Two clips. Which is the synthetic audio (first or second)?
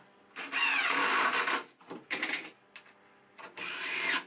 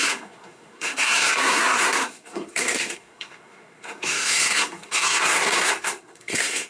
second